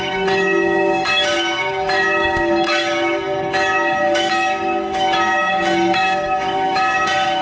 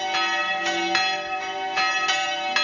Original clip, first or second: second